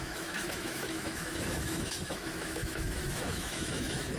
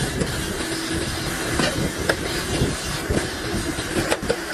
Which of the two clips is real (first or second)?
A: second